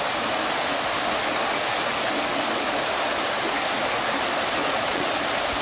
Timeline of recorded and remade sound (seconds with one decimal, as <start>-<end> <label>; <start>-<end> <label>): 0.0-4.6 recorded; 4.6-5.1 remade; 5.1-5.6 recorded